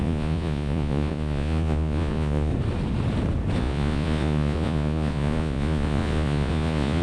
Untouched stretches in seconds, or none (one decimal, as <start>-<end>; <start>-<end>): 2.5-3.6